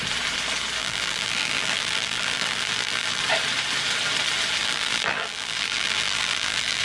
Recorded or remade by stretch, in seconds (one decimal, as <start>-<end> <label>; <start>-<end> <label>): 0.0-0.8 recorded; 0.8-3.2 remade; 3.2-4.6 recorded; 4.6-6.8 remade